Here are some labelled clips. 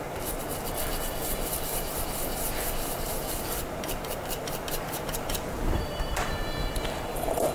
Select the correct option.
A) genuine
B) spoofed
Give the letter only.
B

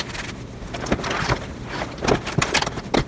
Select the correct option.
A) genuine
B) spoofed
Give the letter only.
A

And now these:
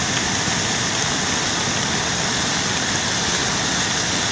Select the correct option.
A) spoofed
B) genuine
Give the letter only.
B